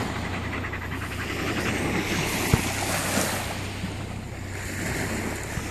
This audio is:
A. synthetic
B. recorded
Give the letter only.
B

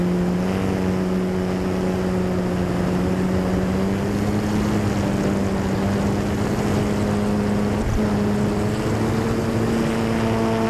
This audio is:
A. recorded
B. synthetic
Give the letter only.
A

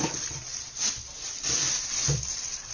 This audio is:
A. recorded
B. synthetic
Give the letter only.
A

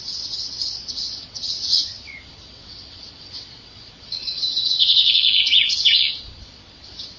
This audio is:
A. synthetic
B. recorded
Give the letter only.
A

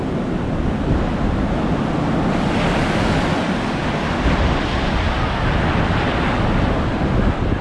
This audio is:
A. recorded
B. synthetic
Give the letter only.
A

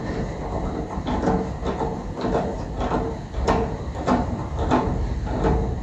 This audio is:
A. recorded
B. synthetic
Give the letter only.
A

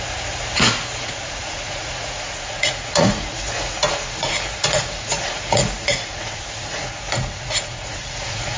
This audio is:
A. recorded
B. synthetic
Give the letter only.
B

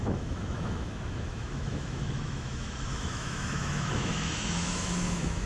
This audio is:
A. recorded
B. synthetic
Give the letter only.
B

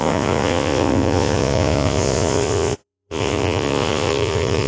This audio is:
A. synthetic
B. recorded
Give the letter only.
A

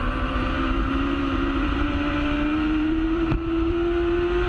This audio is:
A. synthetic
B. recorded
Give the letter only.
A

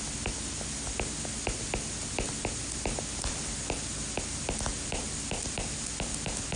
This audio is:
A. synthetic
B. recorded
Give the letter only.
B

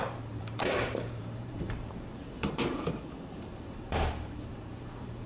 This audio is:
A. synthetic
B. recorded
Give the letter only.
A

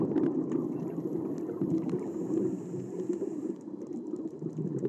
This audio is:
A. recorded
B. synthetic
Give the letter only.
A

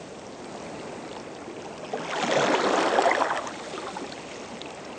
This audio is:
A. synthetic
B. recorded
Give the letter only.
B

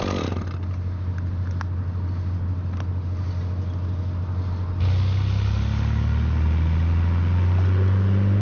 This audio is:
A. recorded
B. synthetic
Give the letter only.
A